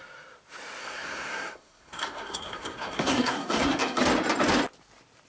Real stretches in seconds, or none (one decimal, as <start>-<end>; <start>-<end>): 0.0-0.8; 4.0-5.3